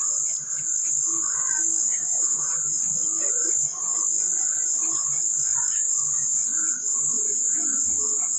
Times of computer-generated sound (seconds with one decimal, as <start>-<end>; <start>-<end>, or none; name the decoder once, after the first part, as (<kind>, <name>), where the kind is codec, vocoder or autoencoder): 1.8-2.4 (codec, SNAC)